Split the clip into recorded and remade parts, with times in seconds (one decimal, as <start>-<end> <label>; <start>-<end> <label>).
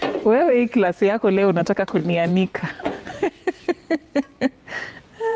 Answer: 0.0-5.4 remade